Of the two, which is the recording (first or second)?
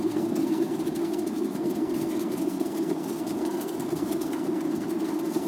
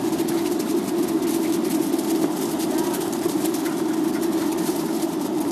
second